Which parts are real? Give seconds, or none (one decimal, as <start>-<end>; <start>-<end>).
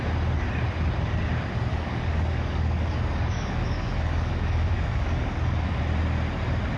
0.0-1.7; 5.8-6.8